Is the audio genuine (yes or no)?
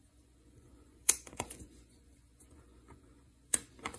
no